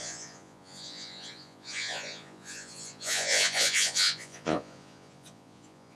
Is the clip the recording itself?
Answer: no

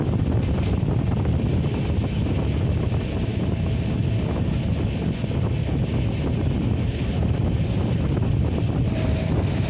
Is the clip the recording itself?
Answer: yes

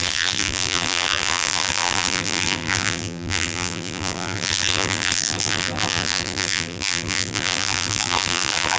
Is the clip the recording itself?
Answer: no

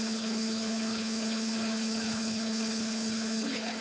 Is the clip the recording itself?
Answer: no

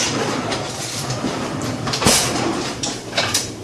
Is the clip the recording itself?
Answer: no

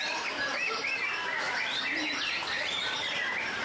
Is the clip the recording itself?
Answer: no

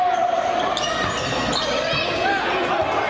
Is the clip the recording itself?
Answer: yes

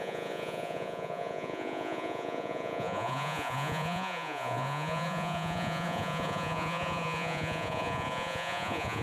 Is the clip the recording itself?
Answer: no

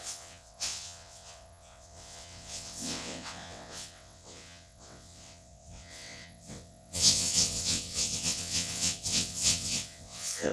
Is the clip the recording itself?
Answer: no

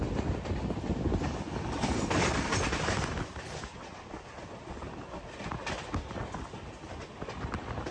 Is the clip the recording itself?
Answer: yes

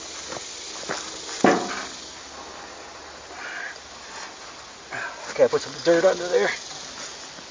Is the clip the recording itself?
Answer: yes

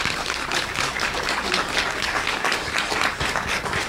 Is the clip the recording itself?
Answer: no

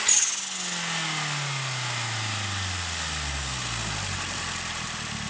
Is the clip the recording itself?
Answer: yes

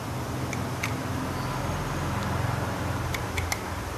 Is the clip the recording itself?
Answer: yes